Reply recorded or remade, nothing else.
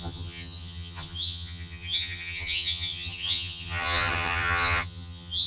remade